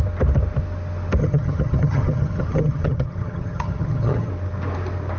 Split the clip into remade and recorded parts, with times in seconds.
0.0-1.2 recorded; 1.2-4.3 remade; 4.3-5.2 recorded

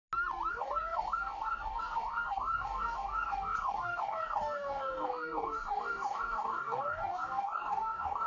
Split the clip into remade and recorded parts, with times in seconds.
0.0-0.5 recorded; 0.5-8.3 remade

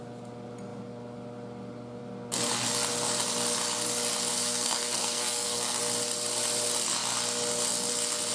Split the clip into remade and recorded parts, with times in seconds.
0.0-4.3 recorded; 4.3-5.8 remade; 5.8-8.3 recorded